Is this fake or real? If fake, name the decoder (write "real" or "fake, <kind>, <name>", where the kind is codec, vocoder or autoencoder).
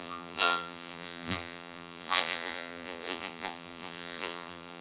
fake, vocoder, BigVGAN v2